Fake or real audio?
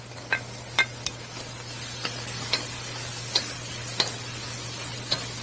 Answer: real